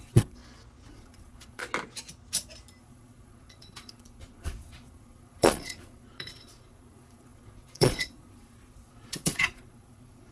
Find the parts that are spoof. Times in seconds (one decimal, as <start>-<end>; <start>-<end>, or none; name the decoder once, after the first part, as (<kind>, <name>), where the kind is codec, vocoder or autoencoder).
0.0-0.4 (vocoder, Vocos); 0.9-1.6; 2.8-10.3